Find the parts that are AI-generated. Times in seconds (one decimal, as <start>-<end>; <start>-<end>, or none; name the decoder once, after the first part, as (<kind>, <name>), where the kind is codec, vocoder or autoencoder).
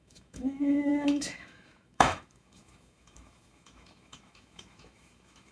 0.0-5.5 (autoencoder, DAC-VAE)